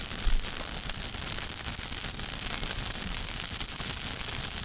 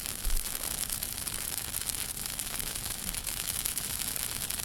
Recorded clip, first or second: first